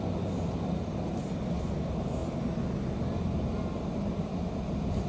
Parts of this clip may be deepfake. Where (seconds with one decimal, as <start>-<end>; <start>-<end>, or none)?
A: none